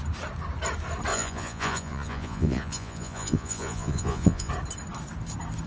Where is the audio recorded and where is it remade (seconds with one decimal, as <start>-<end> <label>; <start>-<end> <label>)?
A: 0.0-1.1 recorded; 1.1-4.5 remade; 4.5-5.7 recorded